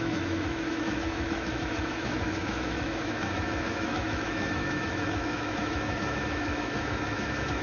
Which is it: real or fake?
fake